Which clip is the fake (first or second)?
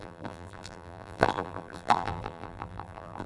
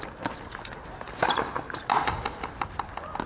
first